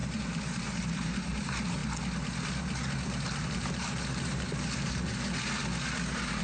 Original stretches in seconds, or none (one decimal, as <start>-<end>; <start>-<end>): 1.8-3.4; 5.6-6.4